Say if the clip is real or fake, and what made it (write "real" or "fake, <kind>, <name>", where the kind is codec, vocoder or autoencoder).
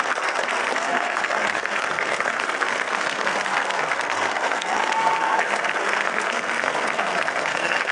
fake, codec, SNAC